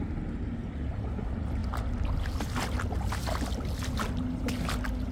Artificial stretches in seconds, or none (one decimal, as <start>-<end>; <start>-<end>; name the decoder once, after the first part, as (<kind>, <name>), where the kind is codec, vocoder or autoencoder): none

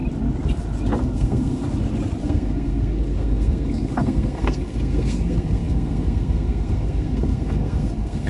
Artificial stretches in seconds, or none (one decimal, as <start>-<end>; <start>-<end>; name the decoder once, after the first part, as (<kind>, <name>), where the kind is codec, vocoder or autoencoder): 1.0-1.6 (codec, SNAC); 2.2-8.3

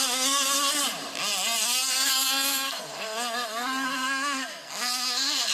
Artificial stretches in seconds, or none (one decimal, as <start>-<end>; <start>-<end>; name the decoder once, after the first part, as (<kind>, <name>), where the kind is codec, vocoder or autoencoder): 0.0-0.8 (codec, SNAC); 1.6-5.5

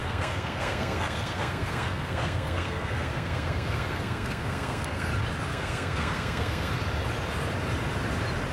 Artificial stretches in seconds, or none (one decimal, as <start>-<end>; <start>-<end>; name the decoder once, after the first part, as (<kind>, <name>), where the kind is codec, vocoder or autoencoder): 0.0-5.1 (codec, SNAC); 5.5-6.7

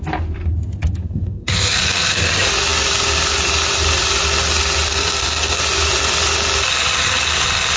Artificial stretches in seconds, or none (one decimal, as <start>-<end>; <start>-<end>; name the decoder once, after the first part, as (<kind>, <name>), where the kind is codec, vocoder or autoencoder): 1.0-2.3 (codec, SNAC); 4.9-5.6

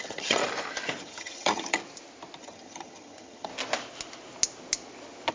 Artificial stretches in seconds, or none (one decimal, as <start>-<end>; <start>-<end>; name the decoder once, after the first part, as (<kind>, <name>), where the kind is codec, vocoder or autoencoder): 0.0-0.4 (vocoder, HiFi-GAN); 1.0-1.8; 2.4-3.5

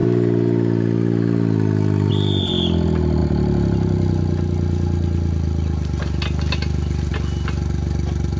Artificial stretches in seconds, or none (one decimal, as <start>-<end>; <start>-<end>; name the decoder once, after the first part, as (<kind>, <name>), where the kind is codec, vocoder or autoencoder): none

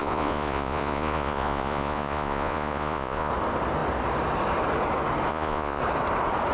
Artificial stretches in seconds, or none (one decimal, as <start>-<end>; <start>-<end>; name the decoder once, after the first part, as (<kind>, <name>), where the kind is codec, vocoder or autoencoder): 0.0-3.3 (vocoder, Vocos); 5.3-5.8